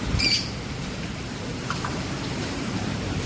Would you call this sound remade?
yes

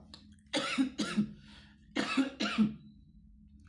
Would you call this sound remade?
no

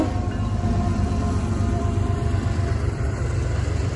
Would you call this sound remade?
yes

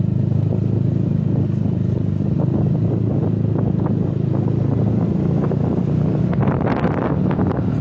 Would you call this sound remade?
no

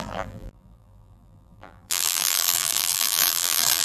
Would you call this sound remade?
yes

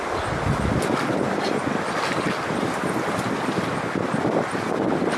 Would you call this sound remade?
no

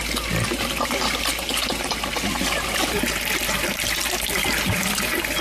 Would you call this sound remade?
no